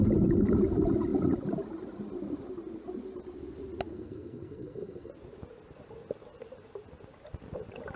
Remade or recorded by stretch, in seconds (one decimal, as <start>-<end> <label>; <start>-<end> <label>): 0.0-3.9 recorded; 3.9-5.1 remade; 5.1-8.0 recorded